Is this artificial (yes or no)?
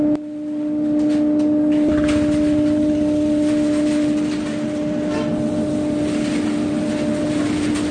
no